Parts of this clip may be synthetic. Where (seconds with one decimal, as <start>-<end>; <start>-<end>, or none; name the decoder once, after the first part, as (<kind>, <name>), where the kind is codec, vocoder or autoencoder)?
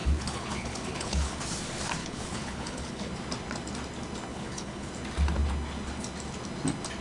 0.0-1.4 (codec, HILCodec); 2.0-3.1; 4.3-4.9